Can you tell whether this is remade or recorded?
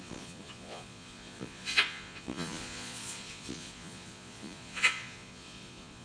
remade